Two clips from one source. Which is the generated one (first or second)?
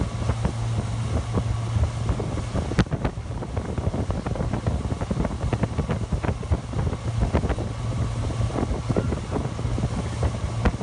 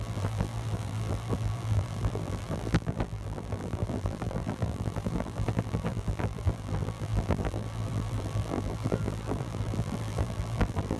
second